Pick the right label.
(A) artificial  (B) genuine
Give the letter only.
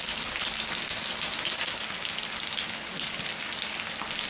B